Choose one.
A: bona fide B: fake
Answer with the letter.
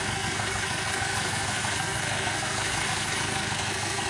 B